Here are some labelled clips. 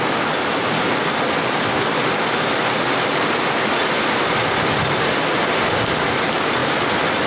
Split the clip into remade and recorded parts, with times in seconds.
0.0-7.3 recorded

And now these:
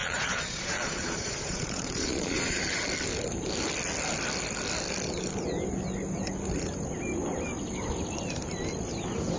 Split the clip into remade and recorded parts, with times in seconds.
0.0-2.6 remade; 2.6-9.4 recorded

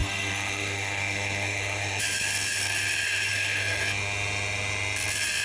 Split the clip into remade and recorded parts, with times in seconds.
0.0-2.0 remade; 2.0-3.3 recorded; 3.3-3.8 remade; 3.8-5.4 recorded

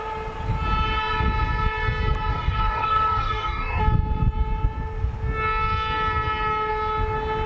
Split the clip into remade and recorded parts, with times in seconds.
0.0-2.3 recorded; 2.3-3.8 remade; 3.8-7.5 recorded

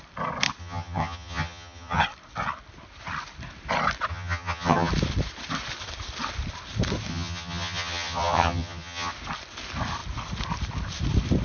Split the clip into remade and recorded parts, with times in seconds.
0.0-0.6 recorded; 0.6-2.0 remade; 2.0-4.1 recorded; 4.1-4.9 remade; 4.9-7.1 recorded; 7.1-9.1 remade; 9.1-11.4 recorded

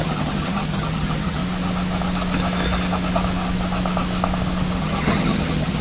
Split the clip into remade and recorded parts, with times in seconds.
0.0-1.4 remade; 1.4-4.8 recorded; 4.8-5.8 remade

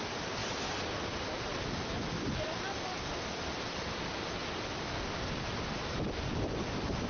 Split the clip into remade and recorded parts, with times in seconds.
0.0-0.4 remade; 0.4-1.1 recorded; 1.1-4.4 remade; 4.4-5.9 recorded; 5.9-7.1 remade